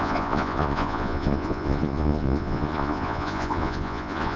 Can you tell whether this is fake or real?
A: fake